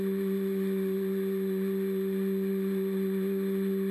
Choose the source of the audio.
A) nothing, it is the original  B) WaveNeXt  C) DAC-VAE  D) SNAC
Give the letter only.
A